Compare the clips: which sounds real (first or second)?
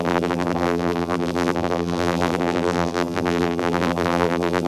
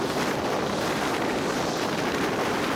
second